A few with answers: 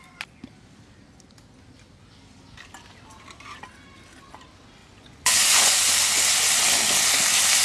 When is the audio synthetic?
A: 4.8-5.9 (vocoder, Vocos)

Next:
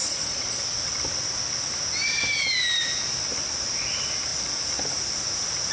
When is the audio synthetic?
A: 0.0-0.6 (vocoder, Vocos)

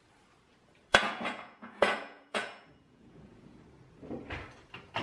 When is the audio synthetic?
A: 0.9-3.6 (vocoder, Vocos)

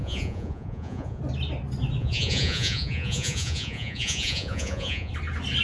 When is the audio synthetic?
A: 0.0-1.2 (vocoder, Vocos); 2.0-5.1

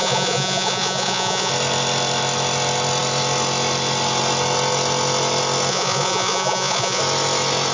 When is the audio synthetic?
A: 0.0-1.5 (vocoder, Vocos); 5.7-7.0

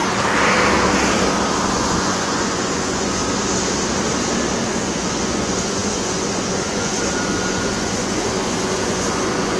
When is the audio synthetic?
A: 1.7-3.2 (vocoder, Vocos); 4.7-9.6

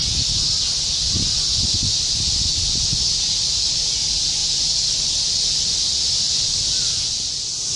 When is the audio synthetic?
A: none